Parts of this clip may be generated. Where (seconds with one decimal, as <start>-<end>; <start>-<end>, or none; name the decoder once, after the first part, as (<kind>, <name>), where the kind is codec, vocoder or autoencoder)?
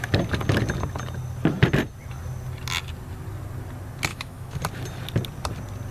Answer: 4.1-4.6 (autoencoder, DAC-VAE)